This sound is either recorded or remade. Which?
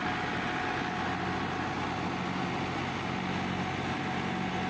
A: recorded